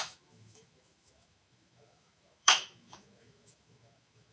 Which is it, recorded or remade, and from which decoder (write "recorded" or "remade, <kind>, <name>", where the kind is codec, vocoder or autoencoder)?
remade, autoencoder, DAC-VAE